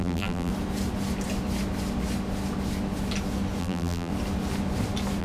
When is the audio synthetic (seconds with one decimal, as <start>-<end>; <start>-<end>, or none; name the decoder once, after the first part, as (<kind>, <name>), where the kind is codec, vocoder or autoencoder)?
0.0-0.5 (vocoder, BigVGAN v2); 3.6-4.1